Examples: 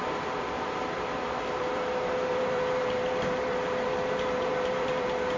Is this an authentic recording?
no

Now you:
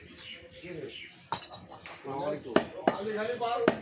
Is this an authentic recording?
yes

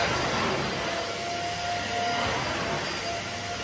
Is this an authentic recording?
yes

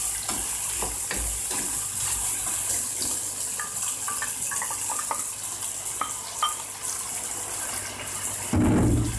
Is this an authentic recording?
yes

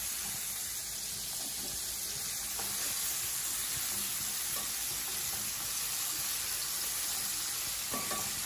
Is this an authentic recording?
yes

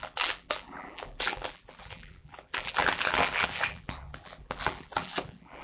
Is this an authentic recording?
no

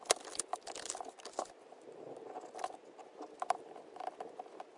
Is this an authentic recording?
yes